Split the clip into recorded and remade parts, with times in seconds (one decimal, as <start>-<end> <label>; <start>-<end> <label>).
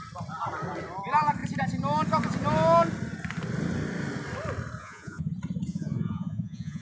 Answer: 0.0-4.8 recorded; 4.8-5.3 remade; 5.3-5.7 recorded; 5.7-6.8 remade